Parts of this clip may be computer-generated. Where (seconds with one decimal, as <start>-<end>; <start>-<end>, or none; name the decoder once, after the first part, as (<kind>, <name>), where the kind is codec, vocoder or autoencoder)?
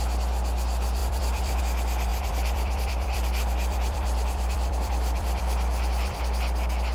1.0-1.6 (vocoder, BigVGAN v2); 2.1-6.2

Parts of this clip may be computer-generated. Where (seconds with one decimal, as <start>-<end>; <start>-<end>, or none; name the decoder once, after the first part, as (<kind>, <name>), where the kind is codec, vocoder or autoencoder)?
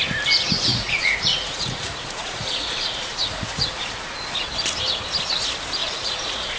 0.7-4.5 (vocoder, Vocos); 5.8-6.6